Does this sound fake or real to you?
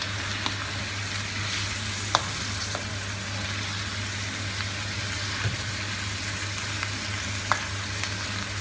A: real